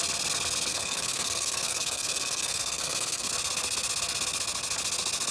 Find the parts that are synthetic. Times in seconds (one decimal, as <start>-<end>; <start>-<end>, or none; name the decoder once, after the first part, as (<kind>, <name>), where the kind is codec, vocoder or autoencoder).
0.7-3.3 (codec, SNAC)